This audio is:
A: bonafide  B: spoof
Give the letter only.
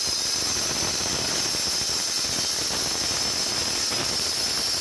A